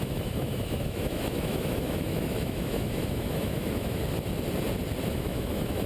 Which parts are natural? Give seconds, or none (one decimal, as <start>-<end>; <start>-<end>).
4.0-5.1